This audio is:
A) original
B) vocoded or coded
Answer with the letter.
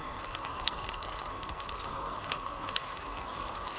B